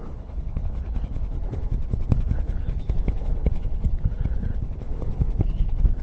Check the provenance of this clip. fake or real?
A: fake